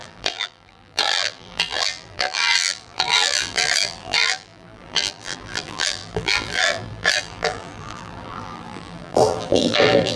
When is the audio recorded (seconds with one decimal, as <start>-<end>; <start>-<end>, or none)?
none